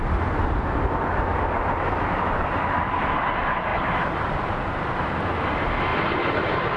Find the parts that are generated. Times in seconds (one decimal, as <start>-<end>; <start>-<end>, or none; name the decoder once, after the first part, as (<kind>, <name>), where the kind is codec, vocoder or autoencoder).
1.3-3.3 (vocoder, BigVGAN v2); 3.7-4.5; 5.9-6.8